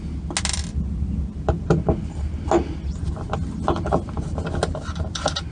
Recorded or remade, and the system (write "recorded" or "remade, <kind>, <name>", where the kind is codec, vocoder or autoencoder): recorded